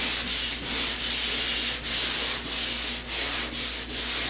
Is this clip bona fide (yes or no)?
yes